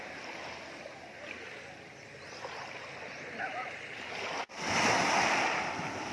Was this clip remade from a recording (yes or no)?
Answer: no